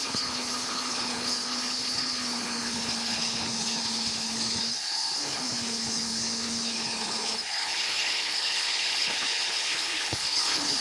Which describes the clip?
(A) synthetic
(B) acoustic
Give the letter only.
A